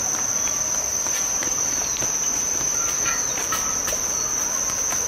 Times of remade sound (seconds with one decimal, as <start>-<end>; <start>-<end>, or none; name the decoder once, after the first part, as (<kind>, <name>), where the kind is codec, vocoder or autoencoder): 0.9-4.0 (vocoder, BigVGAN v2)